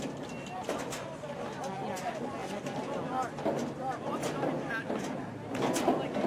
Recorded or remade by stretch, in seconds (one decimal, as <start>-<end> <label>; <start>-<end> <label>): 0.0-6.3 recorded